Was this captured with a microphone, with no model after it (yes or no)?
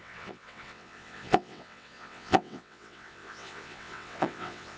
no